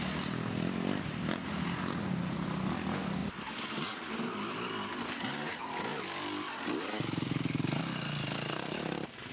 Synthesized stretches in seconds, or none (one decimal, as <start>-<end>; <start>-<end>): none